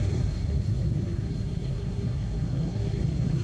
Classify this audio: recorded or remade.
remade